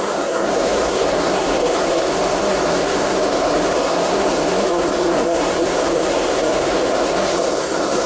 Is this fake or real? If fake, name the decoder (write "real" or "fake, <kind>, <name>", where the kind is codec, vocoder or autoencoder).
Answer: fake, codec, SNAC